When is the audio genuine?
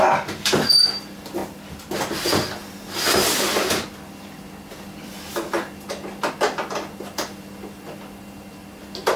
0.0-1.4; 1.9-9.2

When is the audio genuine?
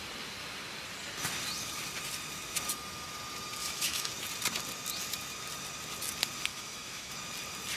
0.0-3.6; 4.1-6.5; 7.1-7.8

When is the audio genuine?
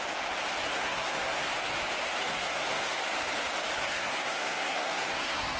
0.0-0.6; 1.5-2.2; 3.0-3.8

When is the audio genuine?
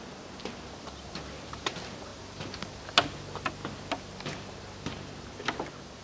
0.0-6.0